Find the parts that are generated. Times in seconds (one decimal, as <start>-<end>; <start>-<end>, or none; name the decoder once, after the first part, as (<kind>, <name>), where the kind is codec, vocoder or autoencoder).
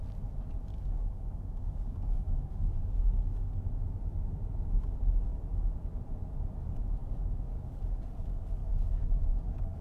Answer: 0.7-3.7 (codec, DAC); 7.0-7.8; 8.6-9.8